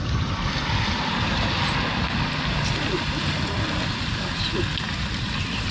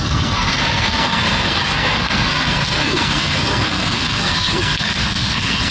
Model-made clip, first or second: second